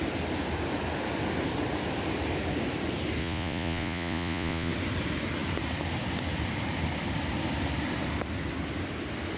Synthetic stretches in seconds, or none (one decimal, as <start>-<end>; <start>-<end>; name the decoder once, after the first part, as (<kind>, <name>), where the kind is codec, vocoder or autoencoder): 3.2-4.7 (vocoder, Vocos)